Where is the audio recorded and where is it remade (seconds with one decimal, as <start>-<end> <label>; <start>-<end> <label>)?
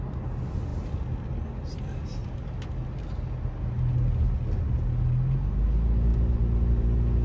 0.0-7.2 recorded